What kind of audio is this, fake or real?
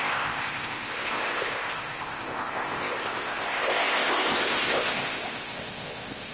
fake